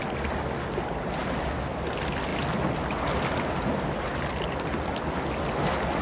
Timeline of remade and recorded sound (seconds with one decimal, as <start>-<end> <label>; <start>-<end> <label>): 0.0-6.0 recorded